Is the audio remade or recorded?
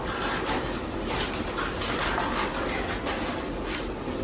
recorded